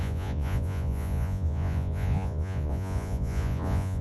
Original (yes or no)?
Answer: no